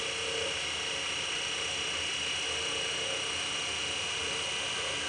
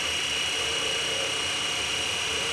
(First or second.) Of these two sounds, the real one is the first